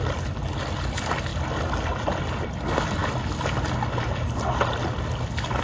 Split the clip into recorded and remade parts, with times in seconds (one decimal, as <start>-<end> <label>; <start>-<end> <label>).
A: 0.0-5.6 recorded